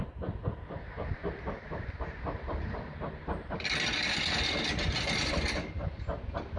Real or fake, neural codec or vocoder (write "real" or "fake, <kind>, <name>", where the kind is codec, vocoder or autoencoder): real